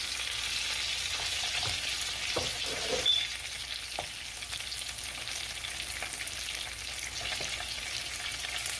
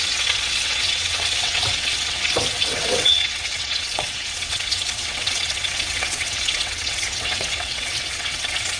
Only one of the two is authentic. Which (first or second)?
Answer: first